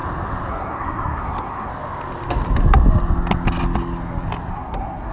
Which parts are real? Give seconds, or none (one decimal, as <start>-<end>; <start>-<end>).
0.0-0.5; 1.7-4.5